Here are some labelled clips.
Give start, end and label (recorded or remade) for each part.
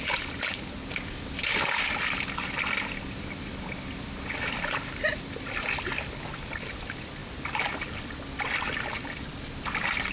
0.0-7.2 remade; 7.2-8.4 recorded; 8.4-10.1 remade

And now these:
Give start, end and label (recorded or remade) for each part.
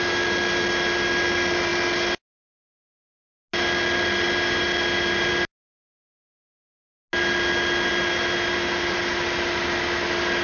0.0-10.4 recorded